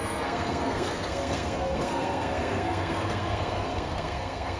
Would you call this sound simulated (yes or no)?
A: yes